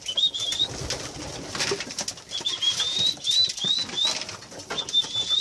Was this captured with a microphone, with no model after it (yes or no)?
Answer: yes